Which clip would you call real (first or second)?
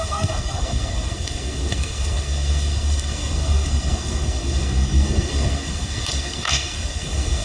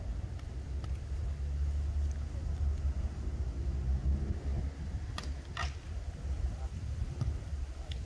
second